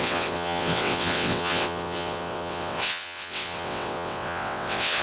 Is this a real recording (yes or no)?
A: no